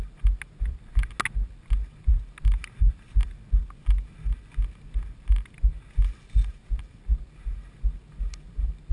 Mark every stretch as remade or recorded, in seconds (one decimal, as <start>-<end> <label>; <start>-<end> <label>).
0.0-8.9 recorded